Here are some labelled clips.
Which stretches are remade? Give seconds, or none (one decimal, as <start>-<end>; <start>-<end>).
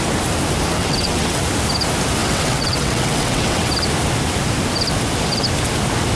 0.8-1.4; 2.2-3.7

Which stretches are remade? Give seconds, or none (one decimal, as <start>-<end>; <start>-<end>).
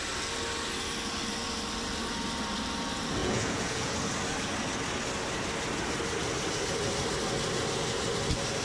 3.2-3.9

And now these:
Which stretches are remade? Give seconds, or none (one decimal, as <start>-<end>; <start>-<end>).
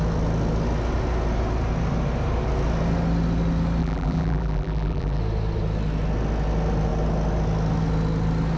3.8-5.2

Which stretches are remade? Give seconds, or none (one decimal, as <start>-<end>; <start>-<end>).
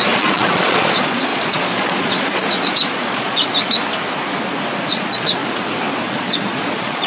0.0-3.5; 4.9-5.4; 6.1-7.1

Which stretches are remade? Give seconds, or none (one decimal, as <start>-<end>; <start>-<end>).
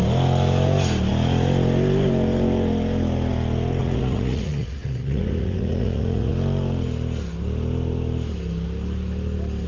3.8-6.3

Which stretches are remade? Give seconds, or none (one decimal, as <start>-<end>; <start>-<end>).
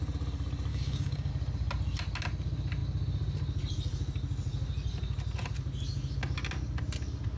0.7-1.3